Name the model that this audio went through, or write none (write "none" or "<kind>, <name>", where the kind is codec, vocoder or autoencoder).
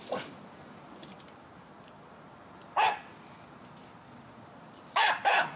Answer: none